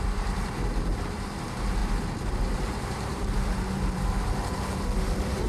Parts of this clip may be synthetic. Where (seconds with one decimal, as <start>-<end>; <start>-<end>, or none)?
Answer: 0.0-5.5